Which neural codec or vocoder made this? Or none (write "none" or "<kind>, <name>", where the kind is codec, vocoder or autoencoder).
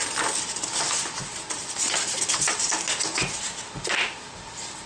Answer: none